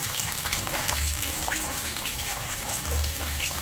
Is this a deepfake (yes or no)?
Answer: yes